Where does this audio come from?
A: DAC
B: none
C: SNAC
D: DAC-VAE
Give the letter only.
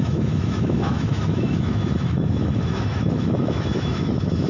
D